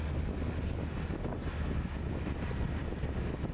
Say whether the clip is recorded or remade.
recorded